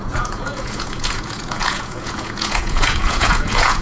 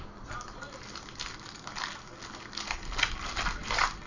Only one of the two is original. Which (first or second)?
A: second